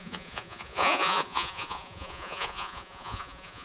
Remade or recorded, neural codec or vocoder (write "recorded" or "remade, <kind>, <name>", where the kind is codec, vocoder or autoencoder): remade, vocoder, Vocos